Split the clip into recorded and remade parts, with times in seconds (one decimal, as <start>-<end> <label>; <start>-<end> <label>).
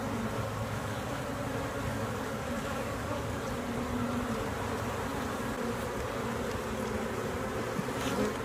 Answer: 0.0-0.6 recorded; 0.6-1.2 remade; 1.2-1.9 recorded; 1.9-3.4 remade; 3.4-8.4 recorded